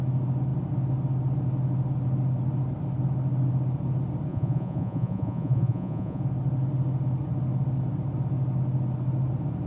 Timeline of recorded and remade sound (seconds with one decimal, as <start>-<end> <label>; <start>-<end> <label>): 0.0-4.3 recorded; 4.3-6.2 remade; 6.2-9.7 recorded